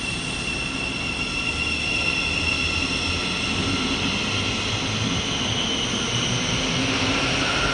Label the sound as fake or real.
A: real